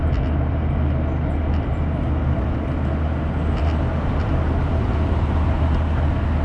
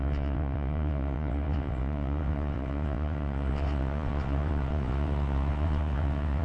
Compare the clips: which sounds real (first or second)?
first